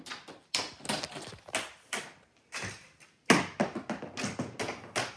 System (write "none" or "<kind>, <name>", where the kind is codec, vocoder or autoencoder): none